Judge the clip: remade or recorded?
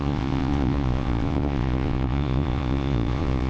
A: remade